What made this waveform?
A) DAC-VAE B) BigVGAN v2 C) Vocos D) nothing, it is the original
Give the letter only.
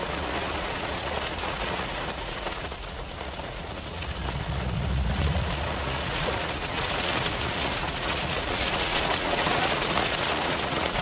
C